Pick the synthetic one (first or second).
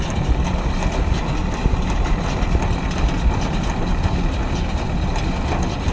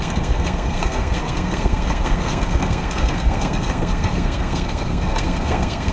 second